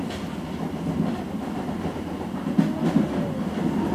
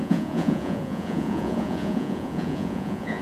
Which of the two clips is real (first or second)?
first